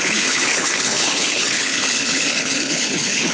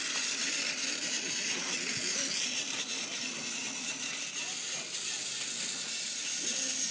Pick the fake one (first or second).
first